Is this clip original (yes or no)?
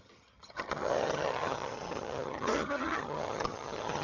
no